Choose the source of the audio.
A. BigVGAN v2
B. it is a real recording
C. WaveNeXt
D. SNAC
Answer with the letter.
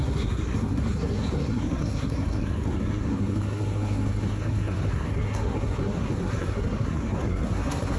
D